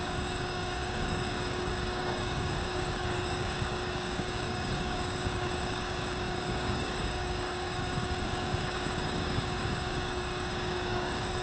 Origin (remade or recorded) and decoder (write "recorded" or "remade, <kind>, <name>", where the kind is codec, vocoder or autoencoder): remade, codec, DAC